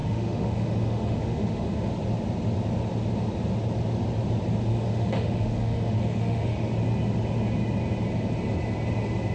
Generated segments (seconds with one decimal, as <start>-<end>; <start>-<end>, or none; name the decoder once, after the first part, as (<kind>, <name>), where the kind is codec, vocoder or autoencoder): 0.0-1.9 (autoencoder, DAC-VAE); 4.7-6.7